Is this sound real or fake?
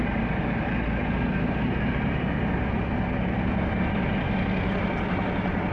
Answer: real